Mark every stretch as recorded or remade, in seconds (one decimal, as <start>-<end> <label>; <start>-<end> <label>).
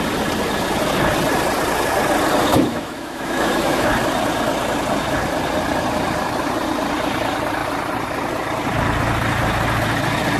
0.0-2.5 recorded; 2.5-3.9 remade; 3.9-10.4 recorded